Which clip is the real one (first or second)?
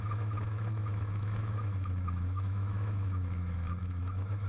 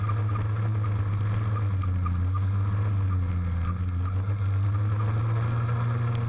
second